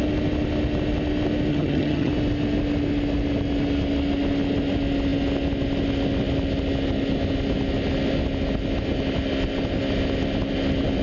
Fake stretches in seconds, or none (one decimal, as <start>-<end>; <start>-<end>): 1.5-2.1